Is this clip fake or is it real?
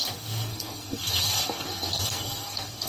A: fake